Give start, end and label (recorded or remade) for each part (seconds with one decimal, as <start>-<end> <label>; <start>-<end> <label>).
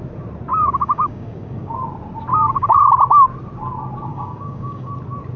0.0-0.5 recorded; 0.5-1.7 remade; 1.7-2.3 recorded; 2.3-2.9 remade; 2.9-4.1 recorded; 4.1-4.9 remade; 4.9-5.4 recorded